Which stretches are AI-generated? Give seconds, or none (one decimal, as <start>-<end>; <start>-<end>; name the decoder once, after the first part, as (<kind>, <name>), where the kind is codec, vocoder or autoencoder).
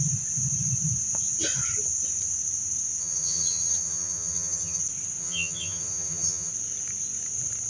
3.0-4.8 (vocoder, HiFi-GAN); 5.2-6.5